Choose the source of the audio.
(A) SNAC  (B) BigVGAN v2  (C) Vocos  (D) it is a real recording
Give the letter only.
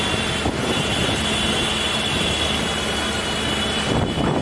D